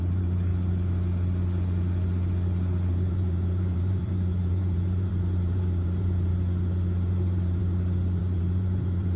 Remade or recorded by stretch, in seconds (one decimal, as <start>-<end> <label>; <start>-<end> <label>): 0.0-0.5 remade; 0.5-2.9 recorded; 2.9-6.3 remade; 6.3-7.1 recorded; 7.1-7.6 remade; 7.6-8.2 recorded; 8.2-9.2 remade